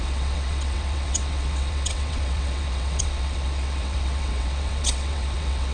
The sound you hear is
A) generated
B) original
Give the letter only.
A